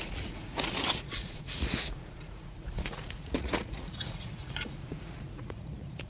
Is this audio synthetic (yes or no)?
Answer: yes